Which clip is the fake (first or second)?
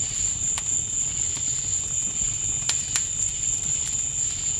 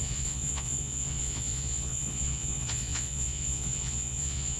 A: second